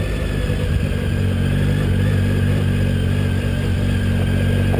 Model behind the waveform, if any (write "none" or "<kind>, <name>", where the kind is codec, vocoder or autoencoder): none